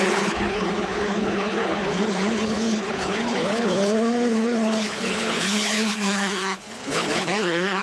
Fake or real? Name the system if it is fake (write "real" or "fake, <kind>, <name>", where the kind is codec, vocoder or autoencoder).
fake, codec, HILCodec